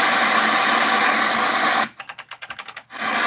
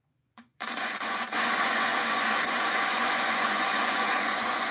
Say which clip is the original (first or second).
first